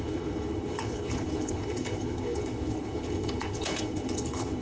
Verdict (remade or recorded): remade